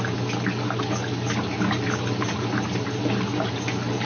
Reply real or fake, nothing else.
real